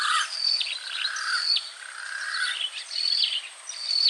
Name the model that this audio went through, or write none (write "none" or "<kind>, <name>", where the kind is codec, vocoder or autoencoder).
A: none